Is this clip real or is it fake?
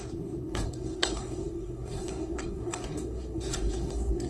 fake